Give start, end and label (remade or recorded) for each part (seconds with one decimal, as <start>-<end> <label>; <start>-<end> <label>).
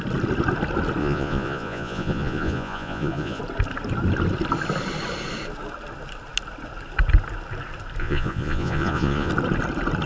0.0-1.0 recorded; 1.0-3.4 remade; 3.4-8.0 recorded; 8.0-9.3 remade; 9.3-10.1 recorded